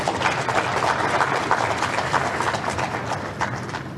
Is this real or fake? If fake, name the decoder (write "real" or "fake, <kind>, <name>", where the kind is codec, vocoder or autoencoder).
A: real